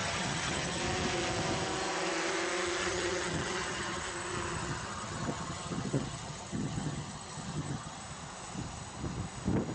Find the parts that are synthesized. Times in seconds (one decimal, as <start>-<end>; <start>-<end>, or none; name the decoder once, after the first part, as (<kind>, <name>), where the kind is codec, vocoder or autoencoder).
0.0-0.8 (vocoder, HiFi-GAN); 2.8-4.0; 4.6-8.0

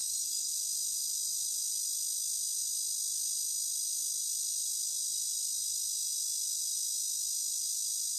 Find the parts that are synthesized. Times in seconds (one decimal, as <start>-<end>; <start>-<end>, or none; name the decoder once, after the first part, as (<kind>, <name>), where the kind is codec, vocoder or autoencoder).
0.0-0.5 (codec, DAC)

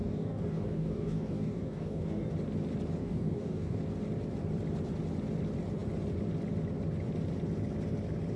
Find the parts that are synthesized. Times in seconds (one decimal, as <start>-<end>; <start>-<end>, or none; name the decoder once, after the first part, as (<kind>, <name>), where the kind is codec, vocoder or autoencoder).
0.0-2.3 (codec, DAC); 3.0-3.8

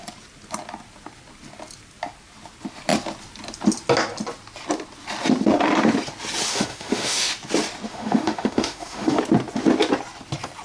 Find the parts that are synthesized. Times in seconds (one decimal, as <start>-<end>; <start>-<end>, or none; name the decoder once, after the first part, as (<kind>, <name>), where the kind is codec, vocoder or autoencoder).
6.5-7.3 (autoencoder, DAC-VAE); 7.9-9.2

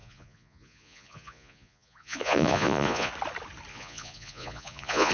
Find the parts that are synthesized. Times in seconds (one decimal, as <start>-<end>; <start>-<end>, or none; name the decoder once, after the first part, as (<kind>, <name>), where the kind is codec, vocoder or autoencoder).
0.0-3.1 (vocoder, Vocos); 3.7-5.1